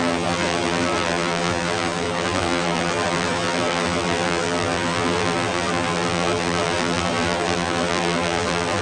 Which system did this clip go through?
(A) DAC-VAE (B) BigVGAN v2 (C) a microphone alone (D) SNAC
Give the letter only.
B